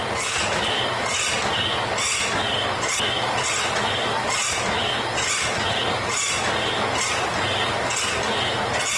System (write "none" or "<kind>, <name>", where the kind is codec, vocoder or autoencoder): none